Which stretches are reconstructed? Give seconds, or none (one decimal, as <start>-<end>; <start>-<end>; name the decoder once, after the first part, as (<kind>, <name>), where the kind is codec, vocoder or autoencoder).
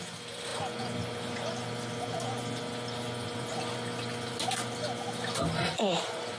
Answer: none